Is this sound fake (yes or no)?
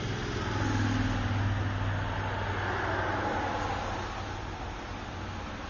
no